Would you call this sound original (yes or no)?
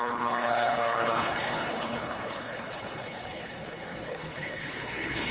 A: no